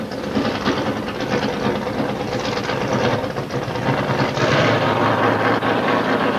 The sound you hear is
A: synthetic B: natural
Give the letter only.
A